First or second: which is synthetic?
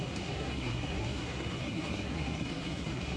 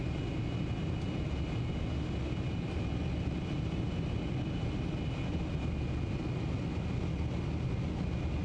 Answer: first